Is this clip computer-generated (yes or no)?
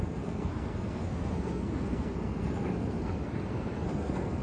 yes